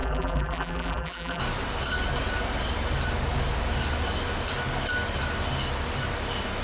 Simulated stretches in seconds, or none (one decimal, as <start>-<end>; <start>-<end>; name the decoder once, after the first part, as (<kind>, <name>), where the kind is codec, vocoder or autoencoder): 0.0-1.4 (vocoder, BigVGAN v2)